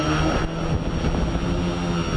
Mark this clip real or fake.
real